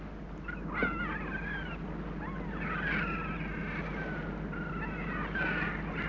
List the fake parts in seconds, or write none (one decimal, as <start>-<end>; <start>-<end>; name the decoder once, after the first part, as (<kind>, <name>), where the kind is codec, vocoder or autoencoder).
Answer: none